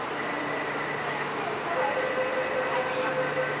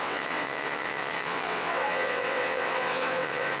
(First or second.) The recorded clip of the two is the first